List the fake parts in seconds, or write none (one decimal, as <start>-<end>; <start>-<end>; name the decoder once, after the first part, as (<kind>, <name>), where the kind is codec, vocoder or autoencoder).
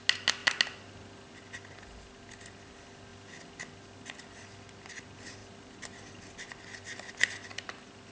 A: none